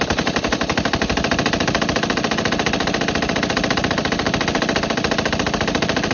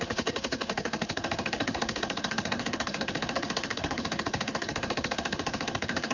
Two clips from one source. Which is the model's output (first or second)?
second